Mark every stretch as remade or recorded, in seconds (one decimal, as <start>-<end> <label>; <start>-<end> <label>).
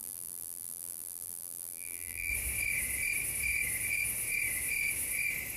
0.0-2.3 remade; 2.3-5.6 recorded